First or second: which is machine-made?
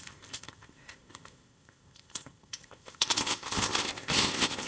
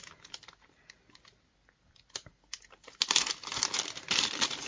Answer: first